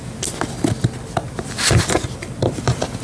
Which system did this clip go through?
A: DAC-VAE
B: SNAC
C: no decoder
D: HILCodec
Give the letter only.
C